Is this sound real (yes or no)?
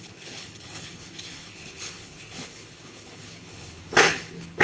no